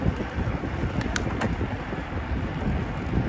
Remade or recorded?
recorded